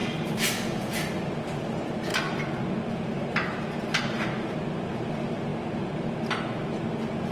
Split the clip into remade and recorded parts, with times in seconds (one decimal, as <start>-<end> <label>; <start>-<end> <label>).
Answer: 0.0-1.2 recorded; 1.2-2.1 remade; 2.1-2.9 recorded; 2.9-5.5 remade; 5.5-7.3 recorded